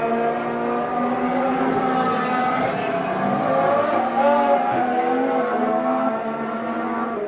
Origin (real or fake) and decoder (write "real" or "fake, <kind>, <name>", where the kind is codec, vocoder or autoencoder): real